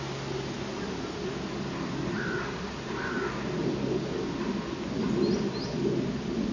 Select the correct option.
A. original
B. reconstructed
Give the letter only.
A